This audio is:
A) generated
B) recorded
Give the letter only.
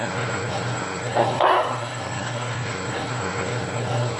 A